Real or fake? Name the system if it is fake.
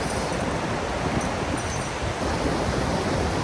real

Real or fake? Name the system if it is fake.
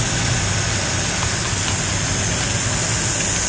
real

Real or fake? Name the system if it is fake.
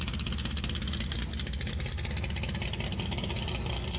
real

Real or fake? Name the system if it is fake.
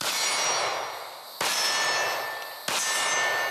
real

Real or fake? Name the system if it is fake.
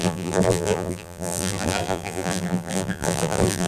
fake, vocoder, BigVGAN v2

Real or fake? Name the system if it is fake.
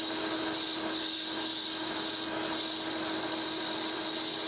real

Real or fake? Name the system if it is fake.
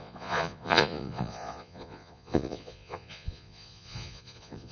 fake, vocoder, Vocos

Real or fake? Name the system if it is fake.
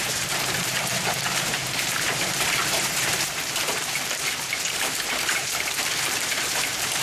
fake, vocoder, BigVGAN v2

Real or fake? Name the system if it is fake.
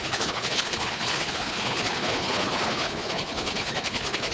fake, codec, HILCodec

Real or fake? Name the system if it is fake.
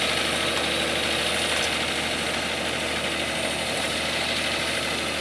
real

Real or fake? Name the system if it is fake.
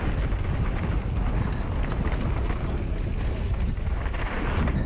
real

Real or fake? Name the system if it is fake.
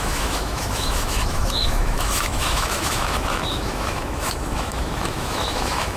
fake, autoencoder, DAC-VAE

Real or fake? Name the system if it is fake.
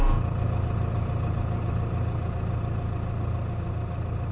real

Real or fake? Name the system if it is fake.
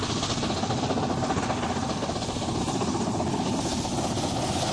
real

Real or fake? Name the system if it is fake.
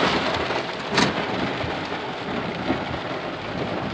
real